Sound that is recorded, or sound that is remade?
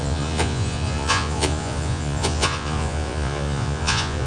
remade